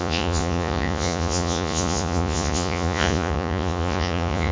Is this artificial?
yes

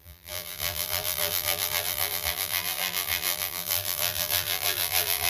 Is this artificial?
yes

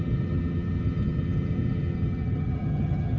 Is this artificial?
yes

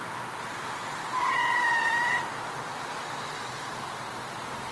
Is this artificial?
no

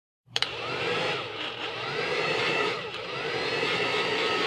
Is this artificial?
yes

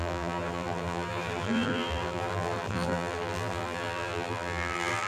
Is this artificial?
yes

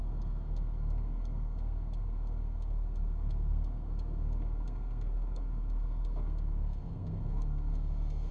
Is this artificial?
yes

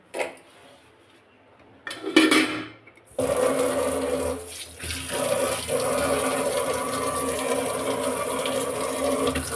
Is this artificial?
no